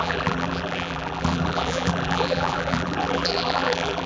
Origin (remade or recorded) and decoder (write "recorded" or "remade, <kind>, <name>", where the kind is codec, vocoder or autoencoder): remade, vocoder, BigVGAN v2